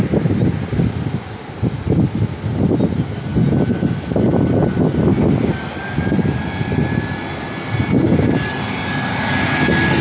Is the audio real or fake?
real